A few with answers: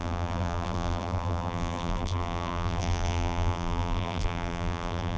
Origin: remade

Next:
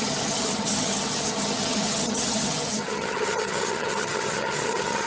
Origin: remade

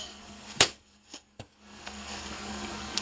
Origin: remade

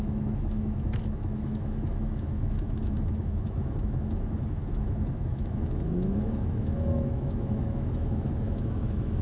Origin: remade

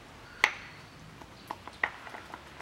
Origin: recorded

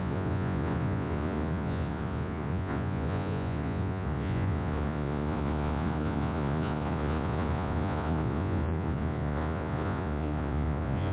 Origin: remade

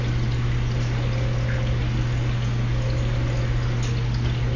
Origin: recorded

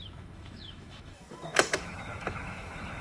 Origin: remade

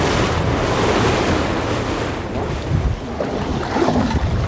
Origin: recorded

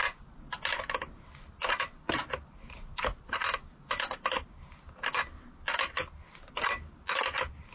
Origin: recorded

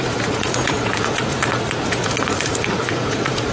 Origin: remade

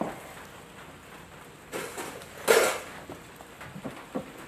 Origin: recorded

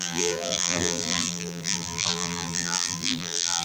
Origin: remade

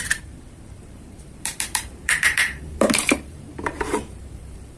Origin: remade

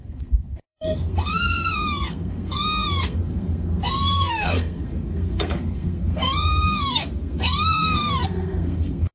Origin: remade